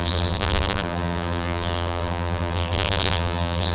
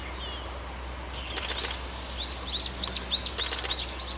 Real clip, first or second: second